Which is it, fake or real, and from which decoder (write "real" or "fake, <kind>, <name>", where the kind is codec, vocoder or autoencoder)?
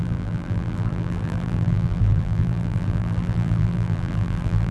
fake, vocoder, BigVGAN v2